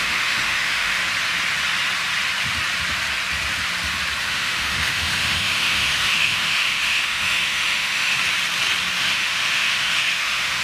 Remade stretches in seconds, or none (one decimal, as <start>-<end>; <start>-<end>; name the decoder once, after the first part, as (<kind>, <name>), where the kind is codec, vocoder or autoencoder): 0.0-1.0 (autoencoder, DAC-VAE); 4.2-8.1; 9.0-10.6